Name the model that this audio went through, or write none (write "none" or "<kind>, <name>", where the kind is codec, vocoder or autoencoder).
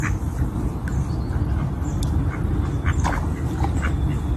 none